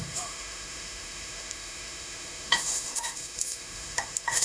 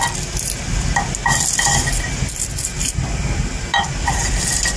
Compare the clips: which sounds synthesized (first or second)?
first